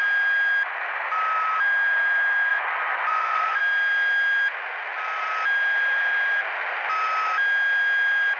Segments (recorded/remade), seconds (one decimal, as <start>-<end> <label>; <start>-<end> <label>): 0.0-2.5 recorded; 2.5-3.6 remade; 3.6-8.4 recorded